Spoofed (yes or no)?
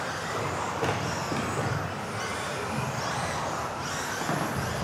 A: no